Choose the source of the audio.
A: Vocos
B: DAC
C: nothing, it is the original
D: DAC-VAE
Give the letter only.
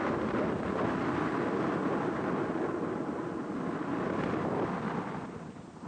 C